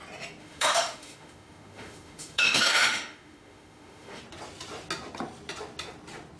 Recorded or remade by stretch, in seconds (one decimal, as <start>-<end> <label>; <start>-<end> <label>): 0.0-0.4 recorded; 0.4-4.2 remade; 4.2-6.4 recorded